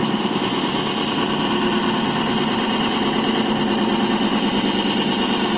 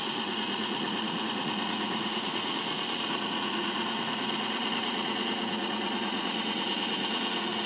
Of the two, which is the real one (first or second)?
first